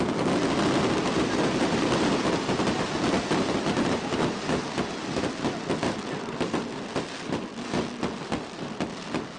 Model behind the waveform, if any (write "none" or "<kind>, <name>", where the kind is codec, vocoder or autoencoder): none